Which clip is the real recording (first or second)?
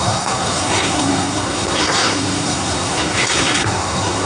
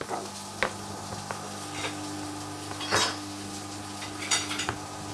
second